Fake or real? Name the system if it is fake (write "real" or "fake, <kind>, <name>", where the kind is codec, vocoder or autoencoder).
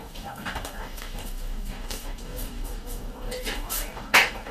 fake, codec, DAC